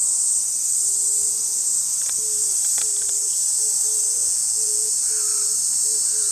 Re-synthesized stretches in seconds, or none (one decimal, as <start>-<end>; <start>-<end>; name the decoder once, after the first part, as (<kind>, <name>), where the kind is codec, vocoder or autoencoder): 4.2-4.9 (vocoder, Vocos)